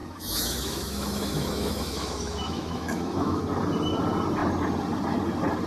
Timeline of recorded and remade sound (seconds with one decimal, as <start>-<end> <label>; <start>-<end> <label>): 0.0-3.4 remade; 3.4-5.7 recorded